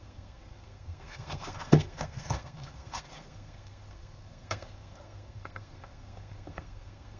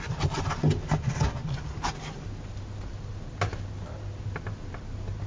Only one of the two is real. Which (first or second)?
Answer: second